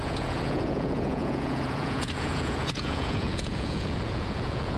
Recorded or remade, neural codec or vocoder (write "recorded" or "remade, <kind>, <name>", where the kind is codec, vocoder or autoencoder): remade, vocoder, Vocos